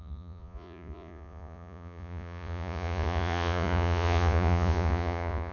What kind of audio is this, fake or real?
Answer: fake